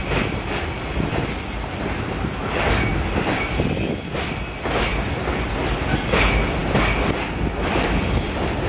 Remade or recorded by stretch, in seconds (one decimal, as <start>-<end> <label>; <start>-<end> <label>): 0.0-8.7 recorded